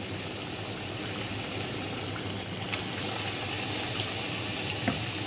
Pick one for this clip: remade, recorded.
recorded